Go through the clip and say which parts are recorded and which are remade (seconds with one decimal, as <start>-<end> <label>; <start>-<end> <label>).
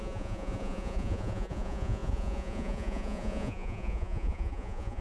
0.0-5.0 remade